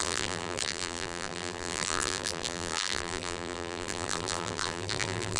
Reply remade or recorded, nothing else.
remade